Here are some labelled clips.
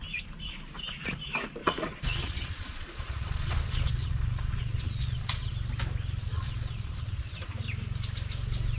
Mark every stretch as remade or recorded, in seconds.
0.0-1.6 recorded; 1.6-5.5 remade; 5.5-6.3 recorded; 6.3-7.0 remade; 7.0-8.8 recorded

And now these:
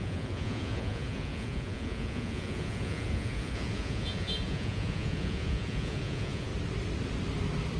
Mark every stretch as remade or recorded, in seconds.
0.0-6.5 remade; 6.5-7.8 recorded